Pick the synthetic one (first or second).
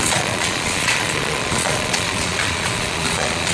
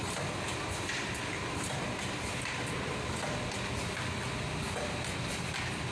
first